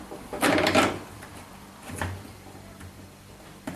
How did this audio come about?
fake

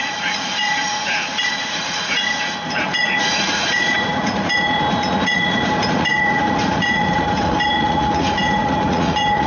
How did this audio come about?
fake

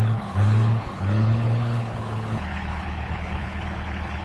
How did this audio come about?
fake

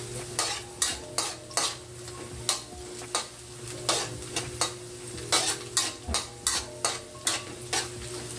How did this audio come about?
real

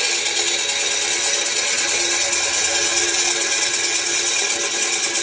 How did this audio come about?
real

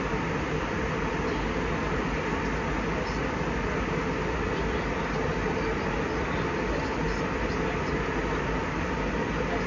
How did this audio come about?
real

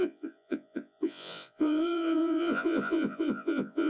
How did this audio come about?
fake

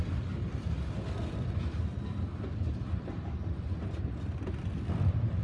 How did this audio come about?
real